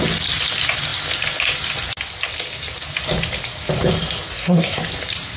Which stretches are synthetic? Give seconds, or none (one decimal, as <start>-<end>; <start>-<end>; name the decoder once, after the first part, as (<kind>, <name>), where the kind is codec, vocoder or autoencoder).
4.3-4.8 (codec, SNAC)